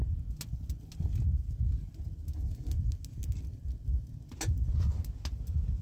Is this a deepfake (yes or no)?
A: no